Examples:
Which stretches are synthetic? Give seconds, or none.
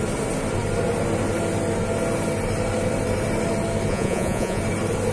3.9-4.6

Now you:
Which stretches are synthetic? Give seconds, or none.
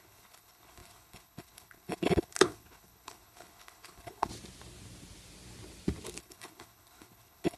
0.0-4.3; 6.2-7.6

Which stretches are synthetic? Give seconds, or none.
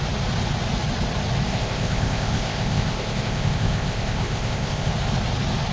1.5-4.9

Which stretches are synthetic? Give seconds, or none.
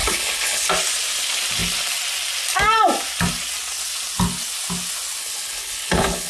0.0-0.7; 5.2-6.3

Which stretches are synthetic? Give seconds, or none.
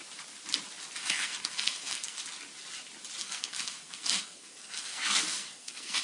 1.0-2.2; 3.2-6.0